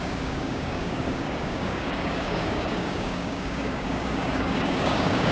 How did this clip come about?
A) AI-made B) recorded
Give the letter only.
A